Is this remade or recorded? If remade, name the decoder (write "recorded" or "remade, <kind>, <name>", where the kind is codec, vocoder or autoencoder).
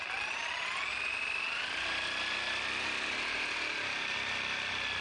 recorded